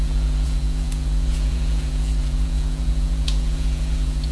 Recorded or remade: remade